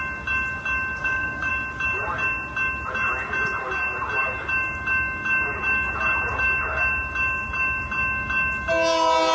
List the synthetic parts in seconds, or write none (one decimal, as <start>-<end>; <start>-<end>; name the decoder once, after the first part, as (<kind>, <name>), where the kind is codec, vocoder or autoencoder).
1.0-1.5 (codec, DAC)